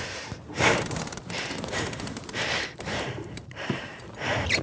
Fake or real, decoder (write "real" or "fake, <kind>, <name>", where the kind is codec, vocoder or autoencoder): fake, vocoder, BigVGAN v2